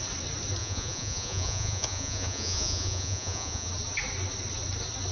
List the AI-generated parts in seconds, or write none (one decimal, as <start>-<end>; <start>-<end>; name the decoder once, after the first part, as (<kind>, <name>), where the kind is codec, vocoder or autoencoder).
0.6-3.7 (vocoder, Vocos)